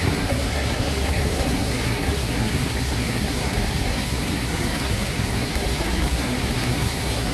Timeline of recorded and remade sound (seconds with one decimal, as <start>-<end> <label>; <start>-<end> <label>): 0.0-7.3 remade